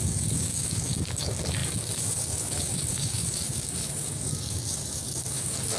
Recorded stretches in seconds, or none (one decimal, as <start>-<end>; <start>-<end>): none